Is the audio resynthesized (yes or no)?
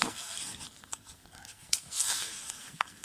yes